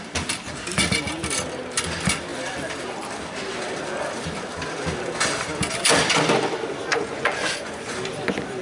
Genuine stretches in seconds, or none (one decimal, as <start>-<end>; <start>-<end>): 0.0-6.9; 8.0-8.6